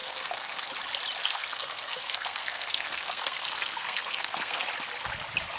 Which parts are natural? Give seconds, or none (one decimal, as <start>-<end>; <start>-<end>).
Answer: 0.7-1.2; 4.6-5.6